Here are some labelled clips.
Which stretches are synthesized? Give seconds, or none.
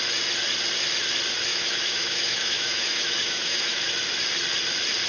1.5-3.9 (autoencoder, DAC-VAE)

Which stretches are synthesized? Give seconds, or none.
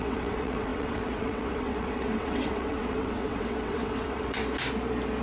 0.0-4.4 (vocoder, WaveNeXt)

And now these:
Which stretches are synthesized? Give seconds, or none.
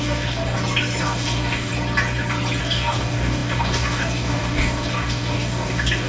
0.0-0.4 (codec, DAC); 1.0-1.7; 2.6-6.1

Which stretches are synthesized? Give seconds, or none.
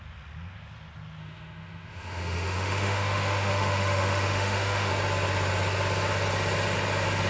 1.2-4.9 (autoencoder, DAC-VAE)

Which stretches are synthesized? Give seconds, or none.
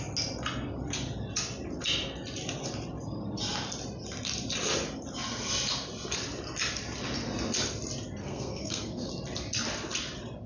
8.2-9.1 (codec, SNAC)